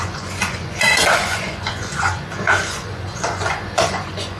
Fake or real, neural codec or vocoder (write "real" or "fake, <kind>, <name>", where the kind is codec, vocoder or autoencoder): fake, vocoder, Vocos